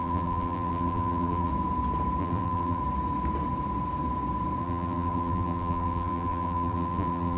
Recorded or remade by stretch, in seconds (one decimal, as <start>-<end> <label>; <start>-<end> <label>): 0.0-1.5 remade; 1.5-2.2 recorded; 2.2-2.8 remade; 2.8-4.6 recorded; 4.6-7.4 remade